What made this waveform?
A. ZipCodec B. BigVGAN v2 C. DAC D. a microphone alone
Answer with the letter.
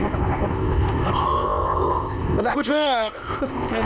A